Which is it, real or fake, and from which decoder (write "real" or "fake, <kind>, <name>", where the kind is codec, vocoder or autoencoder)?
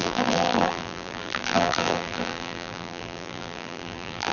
fake, vocoder, BigVGAN v2